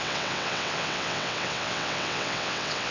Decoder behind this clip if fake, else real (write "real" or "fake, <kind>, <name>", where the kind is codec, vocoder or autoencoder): fake, vocoder, WaveNeXt